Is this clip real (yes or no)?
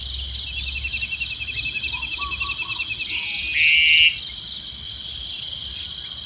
yes